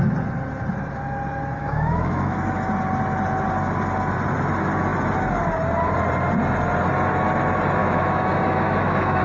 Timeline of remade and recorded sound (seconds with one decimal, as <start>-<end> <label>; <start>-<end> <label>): 0.0-1.6 recorded; 1.6-2.7 remade; 2.7-7.8 recorded; 7.8-9.2 remade